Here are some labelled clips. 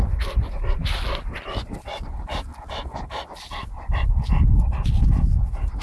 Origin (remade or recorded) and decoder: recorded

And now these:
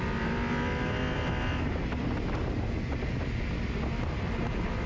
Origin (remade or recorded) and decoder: recorded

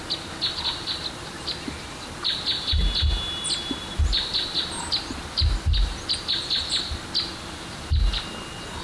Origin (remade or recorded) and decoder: recorded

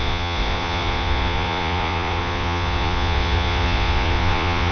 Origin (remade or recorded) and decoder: remade, vocoder, Vocos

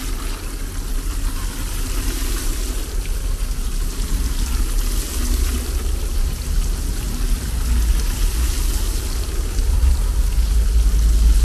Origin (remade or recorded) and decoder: recorded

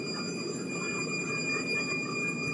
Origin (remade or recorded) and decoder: recorded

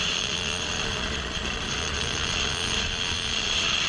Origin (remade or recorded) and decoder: remade, vocoder, Vocos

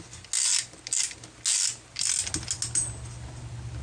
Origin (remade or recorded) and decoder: recorded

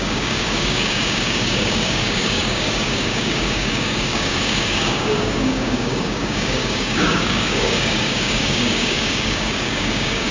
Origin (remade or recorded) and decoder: remade, codec, DAC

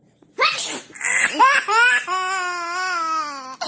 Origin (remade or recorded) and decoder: recorded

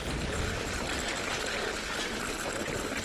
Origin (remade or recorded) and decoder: recorded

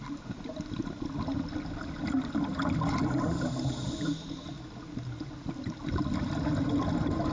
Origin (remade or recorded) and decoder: recorded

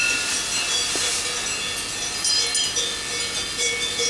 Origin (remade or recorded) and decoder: recorded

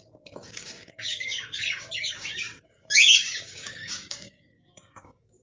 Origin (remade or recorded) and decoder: remade, codec, DAC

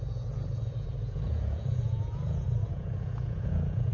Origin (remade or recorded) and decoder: remade, vocoder, Vocos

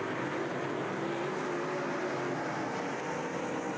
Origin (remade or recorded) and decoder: recorded